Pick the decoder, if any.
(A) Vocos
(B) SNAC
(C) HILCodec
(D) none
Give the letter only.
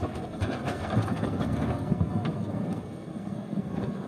B